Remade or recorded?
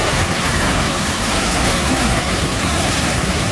remade